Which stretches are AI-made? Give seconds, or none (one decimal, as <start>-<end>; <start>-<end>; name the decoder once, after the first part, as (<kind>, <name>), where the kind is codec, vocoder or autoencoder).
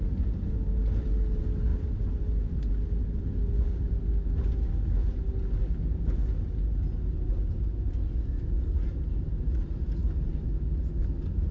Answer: none